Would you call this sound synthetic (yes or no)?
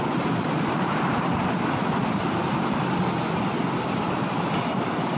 no